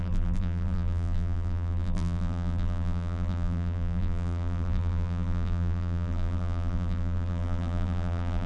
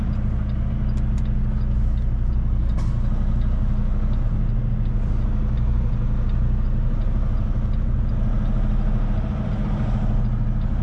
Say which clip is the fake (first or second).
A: first